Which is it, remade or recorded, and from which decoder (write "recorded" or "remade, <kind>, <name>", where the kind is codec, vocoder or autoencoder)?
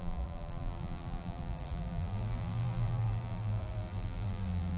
remade, vocoder, BigVGAN v2